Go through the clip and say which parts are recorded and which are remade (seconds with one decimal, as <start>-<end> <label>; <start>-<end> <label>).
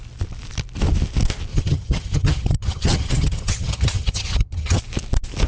0.0-1.5 recorded; 1.5-4.8 remade; 4.8-5.5 recorded